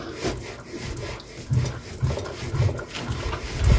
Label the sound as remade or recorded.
recorded